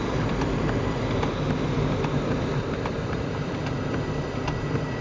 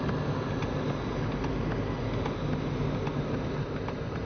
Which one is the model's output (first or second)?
first